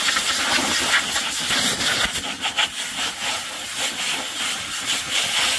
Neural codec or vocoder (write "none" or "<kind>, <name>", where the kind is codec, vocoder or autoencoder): none